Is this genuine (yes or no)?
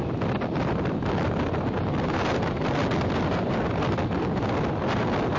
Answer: yes